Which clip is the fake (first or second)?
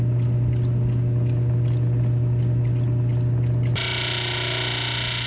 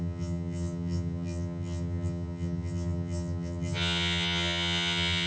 second